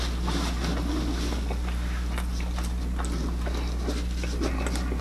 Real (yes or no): yes